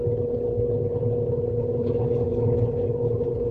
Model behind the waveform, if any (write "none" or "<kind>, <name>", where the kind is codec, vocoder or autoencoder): none